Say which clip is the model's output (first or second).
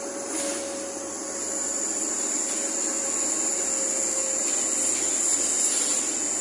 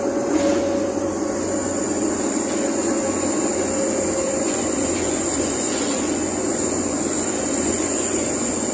second